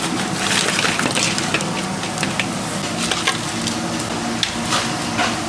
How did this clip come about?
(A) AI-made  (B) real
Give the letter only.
B